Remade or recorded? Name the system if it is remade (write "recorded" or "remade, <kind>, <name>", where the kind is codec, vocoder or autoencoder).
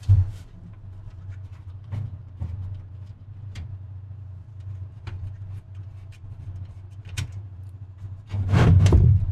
remade, vocoder, BigVGAN v2